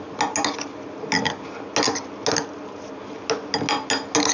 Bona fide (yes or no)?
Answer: yes